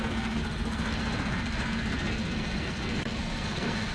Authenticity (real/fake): fake